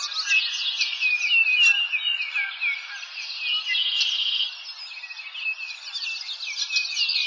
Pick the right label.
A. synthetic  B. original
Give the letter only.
B